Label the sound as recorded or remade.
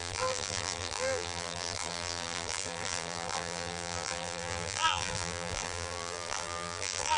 remade